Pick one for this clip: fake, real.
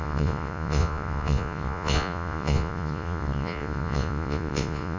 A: fake